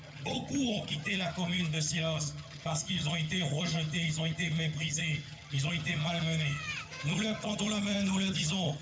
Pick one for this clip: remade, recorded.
remade